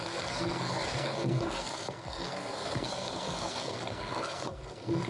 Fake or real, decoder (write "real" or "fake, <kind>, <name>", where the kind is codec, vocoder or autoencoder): fake, codec, SNAC